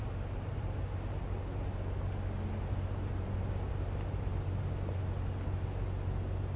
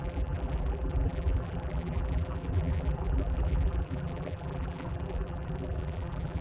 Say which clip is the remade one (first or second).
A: second